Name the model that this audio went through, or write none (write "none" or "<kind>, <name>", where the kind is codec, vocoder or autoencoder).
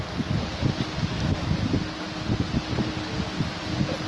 none